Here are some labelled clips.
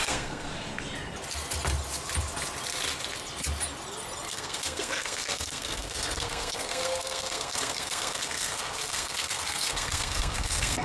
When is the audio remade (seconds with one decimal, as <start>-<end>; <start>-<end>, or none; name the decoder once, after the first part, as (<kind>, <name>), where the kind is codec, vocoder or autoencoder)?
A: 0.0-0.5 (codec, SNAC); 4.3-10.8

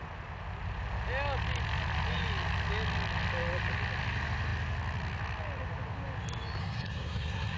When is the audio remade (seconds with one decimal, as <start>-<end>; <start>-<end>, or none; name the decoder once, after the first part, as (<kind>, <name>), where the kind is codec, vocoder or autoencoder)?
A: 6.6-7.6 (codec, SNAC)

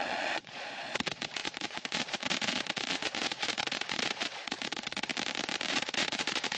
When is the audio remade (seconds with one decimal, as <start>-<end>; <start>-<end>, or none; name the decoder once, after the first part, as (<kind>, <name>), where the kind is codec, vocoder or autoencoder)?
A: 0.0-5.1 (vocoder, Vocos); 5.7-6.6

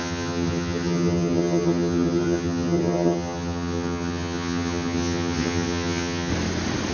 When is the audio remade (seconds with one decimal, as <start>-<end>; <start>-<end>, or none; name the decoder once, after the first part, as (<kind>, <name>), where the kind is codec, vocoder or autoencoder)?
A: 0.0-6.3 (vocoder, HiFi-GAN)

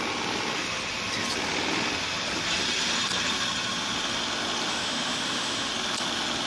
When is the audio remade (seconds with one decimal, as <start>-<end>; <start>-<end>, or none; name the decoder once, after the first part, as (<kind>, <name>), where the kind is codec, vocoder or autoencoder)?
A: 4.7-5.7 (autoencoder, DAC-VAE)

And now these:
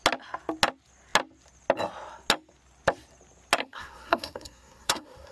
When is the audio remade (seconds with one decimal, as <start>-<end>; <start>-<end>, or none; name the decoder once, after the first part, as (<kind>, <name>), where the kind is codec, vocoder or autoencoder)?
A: 3.6-5.3 (codec, SNAC)